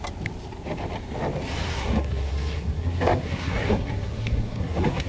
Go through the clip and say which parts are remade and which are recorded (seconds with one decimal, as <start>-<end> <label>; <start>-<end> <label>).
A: 0.0-1.7 recorded; 1.7-5.1 remade